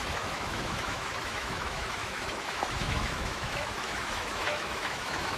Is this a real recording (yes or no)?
no